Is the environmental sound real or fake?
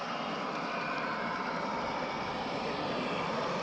real